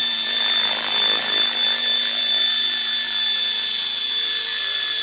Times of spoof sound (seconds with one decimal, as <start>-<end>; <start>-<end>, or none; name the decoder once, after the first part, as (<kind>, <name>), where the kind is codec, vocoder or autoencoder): 0.0-5.0 (vocoder, BigVGAN v2)